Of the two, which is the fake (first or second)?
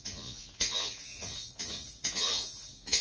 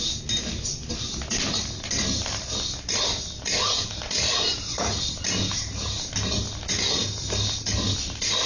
first